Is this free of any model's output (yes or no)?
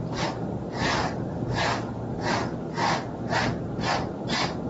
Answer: yes